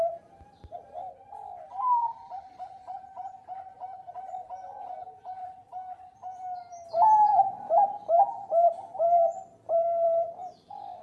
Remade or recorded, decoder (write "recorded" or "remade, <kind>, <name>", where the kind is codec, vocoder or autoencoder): remade, vocoder, BigVGAN v2